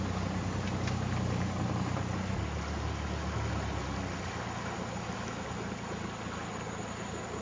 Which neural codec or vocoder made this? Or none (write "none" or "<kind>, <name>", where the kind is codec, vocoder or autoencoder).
none